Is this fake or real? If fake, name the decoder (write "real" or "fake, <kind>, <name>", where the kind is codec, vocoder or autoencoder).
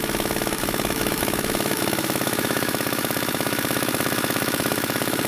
fake, autoencoder, DAC-VAE